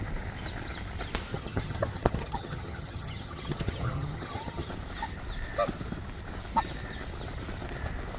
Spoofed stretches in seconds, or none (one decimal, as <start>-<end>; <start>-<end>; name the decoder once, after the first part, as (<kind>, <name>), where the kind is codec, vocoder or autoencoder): 1.3-4.7 (vocoder, HiFi-GAN)